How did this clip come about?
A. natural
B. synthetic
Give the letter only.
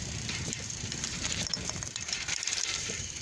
B